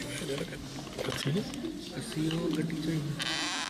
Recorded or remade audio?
recorded